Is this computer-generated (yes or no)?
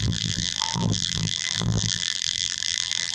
yes